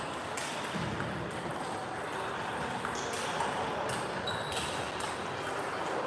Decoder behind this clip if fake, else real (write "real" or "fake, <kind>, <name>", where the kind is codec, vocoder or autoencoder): real